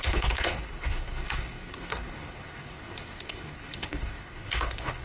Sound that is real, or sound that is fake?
fake